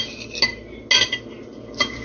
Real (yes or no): yes